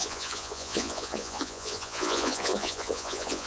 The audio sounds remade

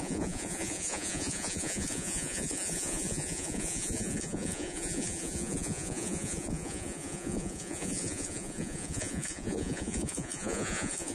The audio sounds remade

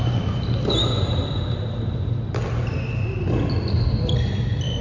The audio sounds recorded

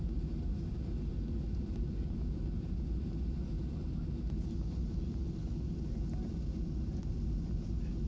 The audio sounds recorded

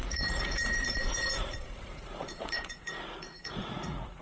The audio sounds remade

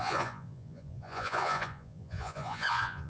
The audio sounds remade